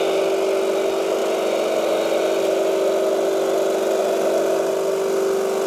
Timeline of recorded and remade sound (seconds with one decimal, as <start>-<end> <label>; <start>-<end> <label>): 0.0-5.7 recorded